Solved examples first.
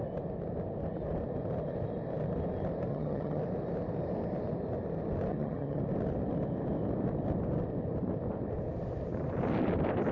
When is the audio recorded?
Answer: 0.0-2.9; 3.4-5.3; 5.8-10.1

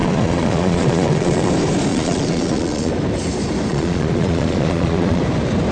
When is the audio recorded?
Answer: 1.5-1.9; 2.9-3.7; 5.2-5.7